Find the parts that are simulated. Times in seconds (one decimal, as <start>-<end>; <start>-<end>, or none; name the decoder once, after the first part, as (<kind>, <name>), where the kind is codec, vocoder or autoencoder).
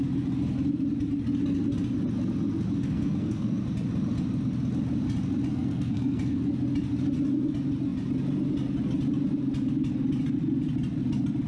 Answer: 2.8-3.6 (codec, SNAC); 5.5-6.4